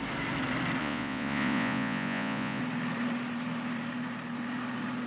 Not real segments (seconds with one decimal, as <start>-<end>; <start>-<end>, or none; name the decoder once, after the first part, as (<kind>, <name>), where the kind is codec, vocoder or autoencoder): 0.8-2.6 (vocoder, Vocos)